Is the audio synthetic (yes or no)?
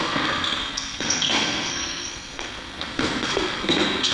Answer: yes